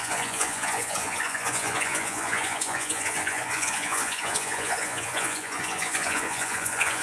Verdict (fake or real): fake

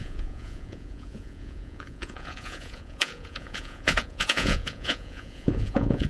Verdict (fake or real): fake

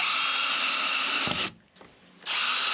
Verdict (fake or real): real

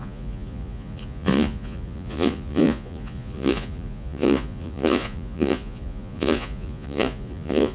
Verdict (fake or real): fake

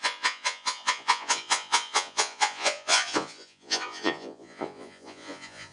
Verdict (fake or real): fake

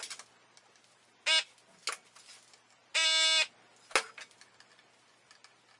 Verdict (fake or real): real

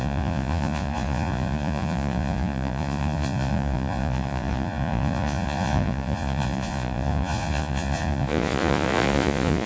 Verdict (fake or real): fake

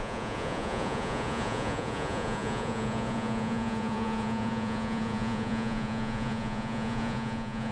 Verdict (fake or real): fake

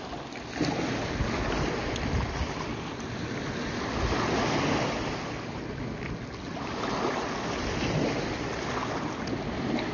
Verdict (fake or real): real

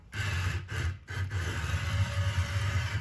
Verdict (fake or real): real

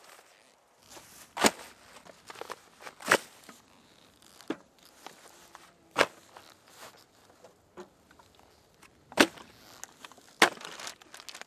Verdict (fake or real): real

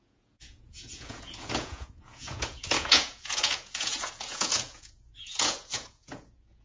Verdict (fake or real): fake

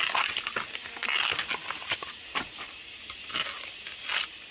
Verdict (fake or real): real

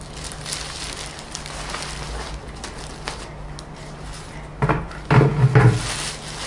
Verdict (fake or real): real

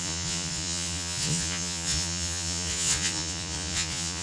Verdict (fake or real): fake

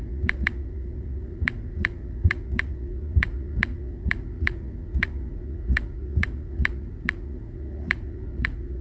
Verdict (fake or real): fake